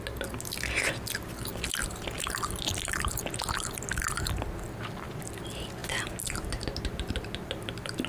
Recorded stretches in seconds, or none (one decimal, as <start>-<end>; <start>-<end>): 0.0-1.5; 5.1-8.1